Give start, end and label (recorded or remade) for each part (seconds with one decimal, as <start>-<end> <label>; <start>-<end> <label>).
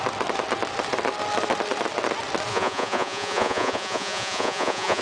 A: 0.0-2.5 recorded; 2.5-5.0 remade